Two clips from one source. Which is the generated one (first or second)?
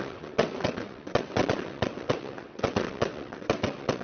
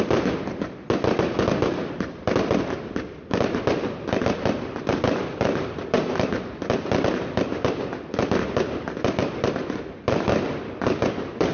first